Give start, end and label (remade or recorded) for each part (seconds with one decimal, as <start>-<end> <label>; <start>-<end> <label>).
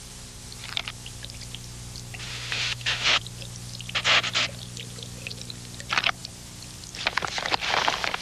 0.0-2.3 recorded; 2.3-3.2 remade; 3.2-8.2 recorded